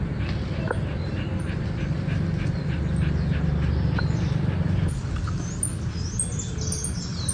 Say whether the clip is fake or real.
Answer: real